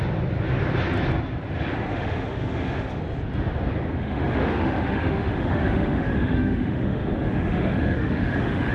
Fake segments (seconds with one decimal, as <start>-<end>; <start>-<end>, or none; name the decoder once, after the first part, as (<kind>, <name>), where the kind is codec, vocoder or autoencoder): 1.9-3.0 (autoencoder, DAC-VAE); 4.0-8.7

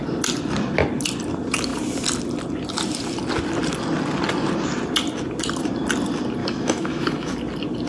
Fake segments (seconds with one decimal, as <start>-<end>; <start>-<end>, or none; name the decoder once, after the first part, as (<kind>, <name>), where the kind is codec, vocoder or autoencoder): 6.4-7.3 (autoencoder, DAC-VAE)